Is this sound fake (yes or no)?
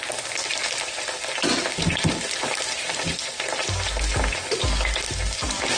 no